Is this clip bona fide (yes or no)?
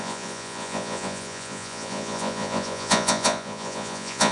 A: no